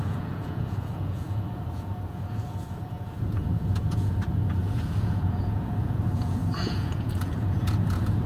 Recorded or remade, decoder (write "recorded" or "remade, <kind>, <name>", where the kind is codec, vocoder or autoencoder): remade, vocoder, Vocos